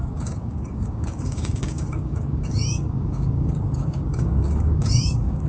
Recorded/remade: remade